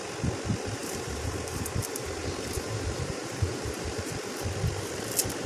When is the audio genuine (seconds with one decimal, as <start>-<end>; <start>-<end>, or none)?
0.0-0.8; 4.1-5.5